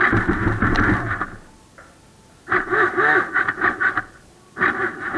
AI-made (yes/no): no